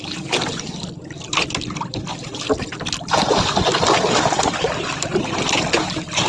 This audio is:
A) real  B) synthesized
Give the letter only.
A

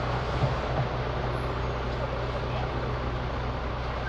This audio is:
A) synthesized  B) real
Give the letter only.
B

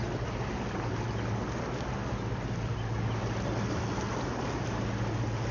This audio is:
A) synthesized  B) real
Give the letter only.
B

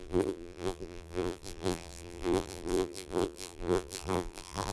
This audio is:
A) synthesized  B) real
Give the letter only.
A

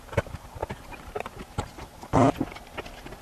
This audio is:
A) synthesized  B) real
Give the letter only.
B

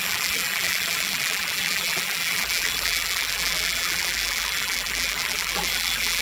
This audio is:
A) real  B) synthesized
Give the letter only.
B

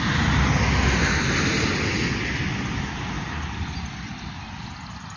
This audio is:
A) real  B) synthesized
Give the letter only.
A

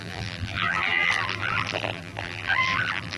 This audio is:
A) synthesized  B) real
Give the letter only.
A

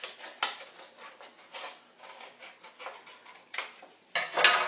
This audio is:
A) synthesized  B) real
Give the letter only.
B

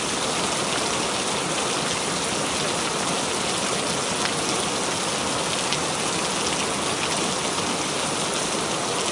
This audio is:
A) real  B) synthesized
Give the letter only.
A